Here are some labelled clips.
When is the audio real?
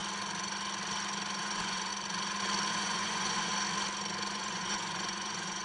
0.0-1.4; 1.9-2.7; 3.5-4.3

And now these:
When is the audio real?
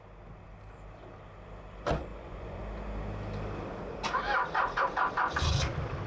0.0-2.1; 2.6-6.1